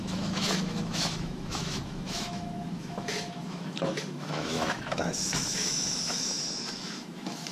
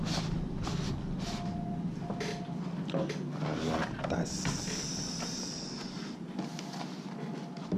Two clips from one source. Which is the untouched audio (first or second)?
second